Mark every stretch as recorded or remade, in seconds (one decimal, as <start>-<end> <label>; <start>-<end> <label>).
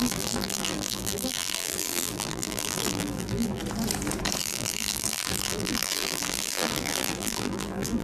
0.0-3.6 remade; 3.6-4.4 recorded; 4.4-8.0 remade